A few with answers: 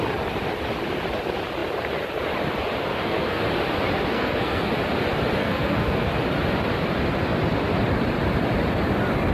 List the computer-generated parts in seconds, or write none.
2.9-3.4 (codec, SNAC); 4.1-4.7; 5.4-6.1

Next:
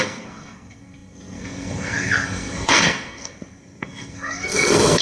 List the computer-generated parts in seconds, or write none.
0.0-5.0 (codec, SNAC)

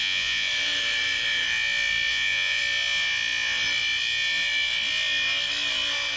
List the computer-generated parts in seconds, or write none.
0.0-0.5 (vocoder, Vocos); 2.1-2.6

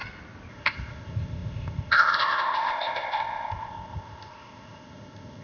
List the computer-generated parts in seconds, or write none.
0.5-5.4 (codec, ZipCodec)

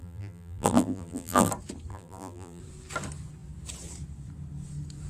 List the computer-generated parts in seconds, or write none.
0.0-1.5 (vocoder, BigVGAN v2); 1.9-2.6

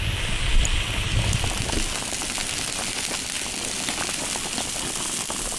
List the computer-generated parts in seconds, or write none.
none

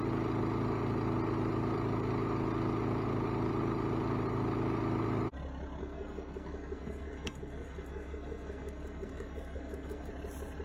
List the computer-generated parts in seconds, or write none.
5.8-10.1 (codec, SNAC)